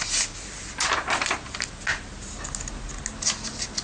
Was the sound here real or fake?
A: real